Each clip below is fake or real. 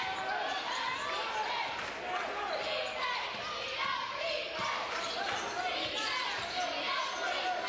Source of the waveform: real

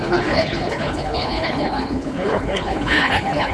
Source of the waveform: fake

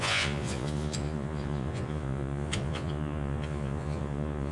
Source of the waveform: fake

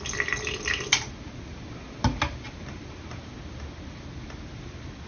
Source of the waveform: real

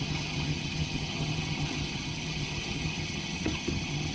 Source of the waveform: fake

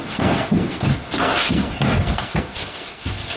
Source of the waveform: fake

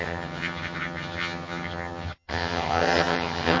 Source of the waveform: fake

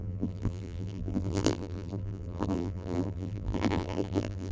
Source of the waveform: fake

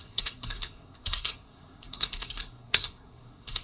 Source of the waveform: fake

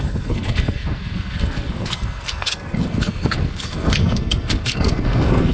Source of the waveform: fake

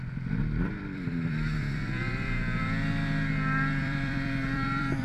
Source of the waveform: fake